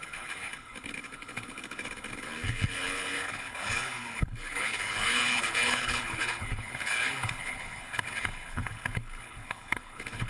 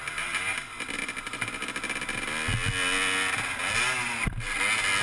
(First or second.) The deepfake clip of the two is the first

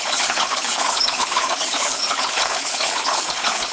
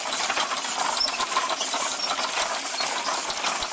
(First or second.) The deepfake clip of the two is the first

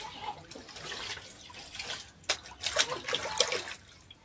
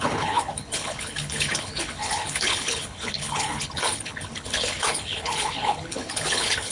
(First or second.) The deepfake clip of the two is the second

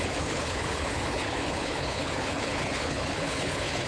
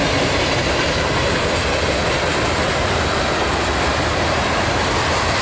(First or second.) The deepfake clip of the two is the first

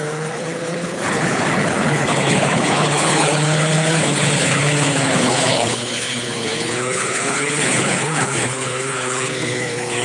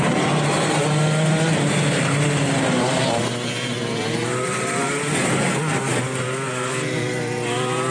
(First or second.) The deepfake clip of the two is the first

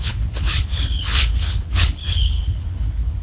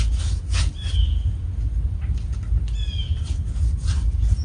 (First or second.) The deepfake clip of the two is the first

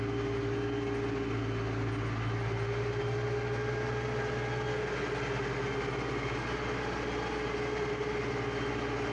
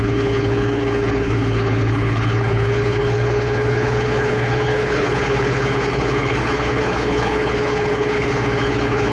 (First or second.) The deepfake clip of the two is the second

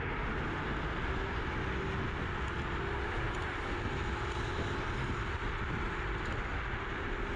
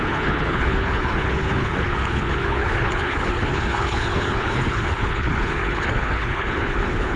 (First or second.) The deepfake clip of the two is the second